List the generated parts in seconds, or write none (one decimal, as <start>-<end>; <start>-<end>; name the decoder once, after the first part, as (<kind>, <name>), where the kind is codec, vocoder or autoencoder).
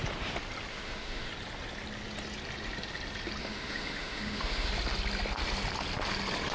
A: 0.7-1.3 (autoencoder, DAC-VAE); 3.4-4.7